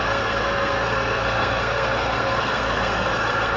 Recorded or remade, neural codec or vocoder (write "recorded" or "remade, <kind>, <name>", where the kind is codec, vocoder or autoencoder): remade, codec, SNAC